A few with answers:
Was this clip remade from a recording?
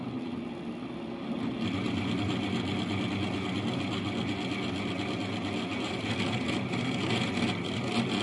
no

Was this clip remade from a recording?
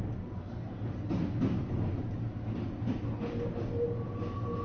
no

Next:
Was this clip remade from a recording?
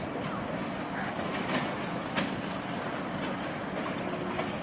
no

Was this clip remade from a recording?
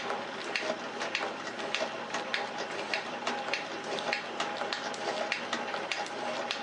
no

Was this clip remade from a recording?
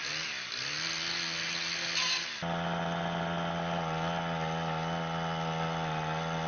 no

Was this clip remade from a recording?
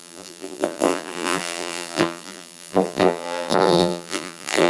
yes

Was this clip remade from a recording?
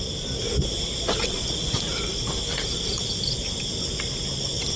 no